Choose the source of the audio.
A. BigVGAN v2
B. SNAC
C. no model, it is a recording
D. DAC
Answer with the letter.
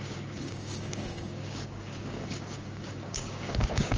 D